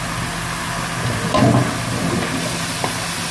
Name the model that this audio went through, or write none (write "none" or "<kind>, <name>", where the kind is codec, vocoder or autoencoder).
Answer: none